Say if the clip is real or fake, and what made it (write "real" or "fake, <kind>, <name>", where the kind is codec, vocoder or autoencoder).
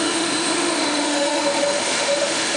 fake, autoencoder, DAC-VAE